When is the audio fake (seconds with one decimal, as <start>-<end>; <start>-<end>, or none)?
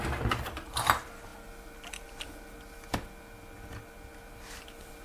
0.0-1.3; 4.3-5.0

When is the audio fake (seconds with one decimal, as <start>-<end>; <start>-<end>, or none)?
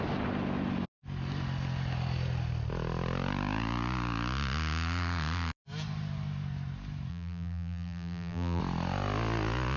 7.1-8.6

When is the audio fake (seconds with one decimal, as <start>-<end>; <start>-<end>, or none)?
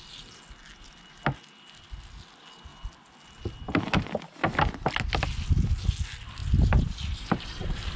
6.4-8.0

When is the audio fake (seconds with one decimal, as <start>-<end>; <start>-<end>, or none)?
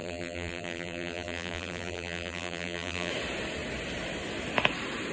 0.0-3.1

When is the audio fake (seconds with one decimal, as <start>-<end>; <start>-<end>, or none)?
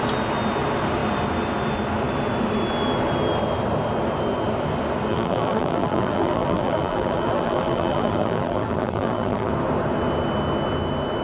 5.1-9.5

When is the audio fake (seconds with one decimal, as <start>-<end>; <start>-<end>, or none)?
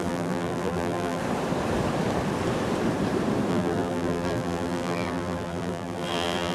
0.0-1.2; 3.5-6.5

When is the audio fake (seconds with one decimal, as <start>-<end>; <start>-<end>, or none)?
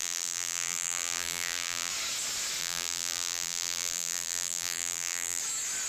0.0-1.9; 2.6-5.4